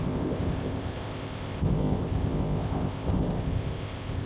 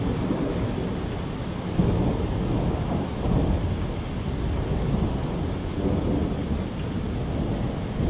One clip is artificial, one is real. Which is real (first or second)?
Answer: second